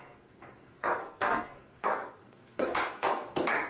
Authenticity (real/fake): fake